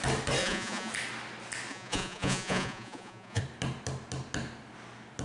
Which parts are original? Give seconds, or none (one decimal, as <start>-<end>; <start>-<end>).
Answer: 0.0-0.4; 0.9-1.7; 3.4-5.2